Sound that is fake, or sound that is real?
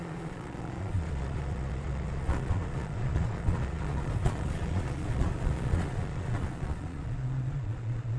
fake